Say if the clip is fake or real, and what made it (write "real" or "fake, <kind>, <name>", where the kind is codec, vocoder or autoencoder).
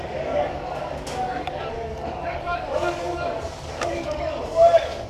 fake, codec, DAC